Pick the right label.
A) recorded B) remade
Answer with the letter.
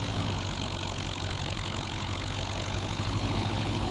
B